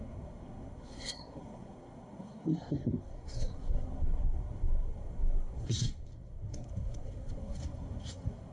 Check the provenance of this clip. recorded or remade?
remade